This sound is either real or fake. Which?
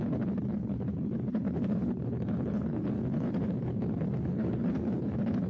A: fake